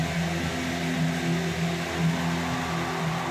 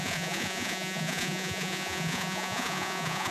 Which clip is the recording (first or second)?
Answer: first